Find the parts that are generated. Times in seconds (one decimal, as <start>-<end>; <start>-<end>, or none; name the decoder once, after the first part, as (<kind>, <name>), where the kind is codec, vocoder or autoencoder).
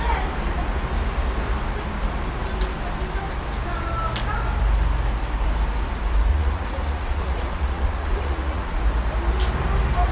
6.3-8.8 (vocoder, Vocos)